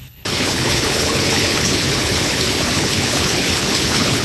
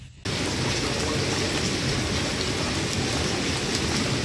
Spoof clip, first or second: first